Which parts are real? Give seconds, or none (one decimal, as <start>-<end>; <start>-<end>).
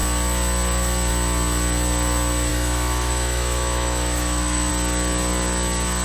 0.0-2.5; 4.7-6.0